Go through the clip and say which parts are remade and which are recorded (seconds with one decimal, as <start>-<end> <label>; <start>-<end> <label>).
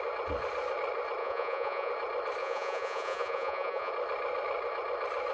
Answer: 0.0-1.2 recorded; 1.2-1.9 remade; 1.9-2.4 recorded; 2.4-3.9 remade; 3.9-5.3 recorded